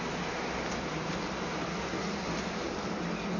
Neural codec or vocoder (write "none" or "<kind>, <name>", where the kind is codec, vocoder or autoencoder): none